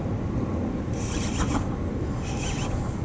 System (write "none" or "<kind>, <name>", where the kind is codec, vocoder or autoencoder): none